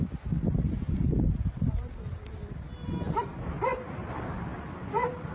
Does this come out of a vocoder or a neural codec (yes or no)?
no